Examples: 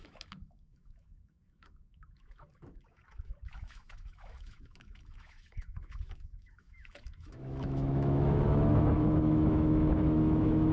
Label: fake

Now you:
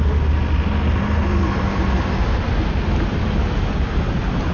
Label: real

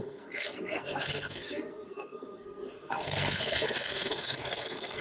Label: fake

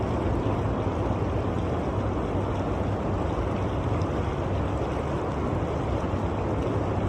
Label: real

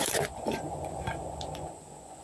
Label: fake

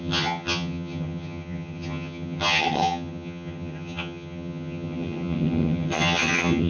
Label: fake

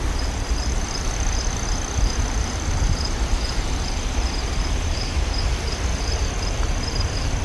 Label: fake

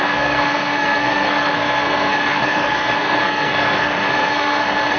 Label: fake